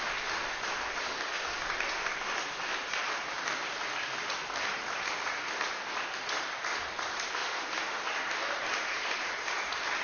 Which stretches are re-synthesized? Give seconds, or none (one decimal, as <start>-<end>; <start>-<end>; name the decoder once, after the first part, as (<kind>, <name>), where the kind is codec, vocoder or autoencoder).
none